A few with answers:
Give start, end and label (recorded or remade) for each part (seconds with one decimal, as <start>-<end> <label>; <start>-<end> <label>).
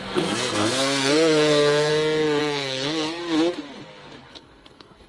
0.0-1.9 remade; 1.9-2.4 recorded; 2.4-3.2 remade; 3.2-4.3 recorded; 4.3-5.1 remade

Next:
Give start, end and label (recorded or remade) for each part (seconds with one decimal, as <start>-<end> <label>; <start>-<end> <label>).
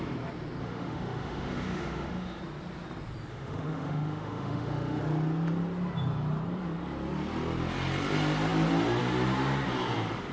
0.0-0.6 recorded; 0.6-2.4 remade; 2.4-3.3 recorded; 3.3-5.0 remade; 5.0-10.3 recorded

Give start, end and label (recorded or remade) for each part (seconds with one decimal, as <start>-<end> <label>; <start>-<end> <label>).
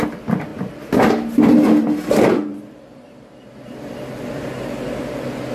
0.0-2.5 recorded; 2.5-4.4 remade; 4.4-5.5 recorded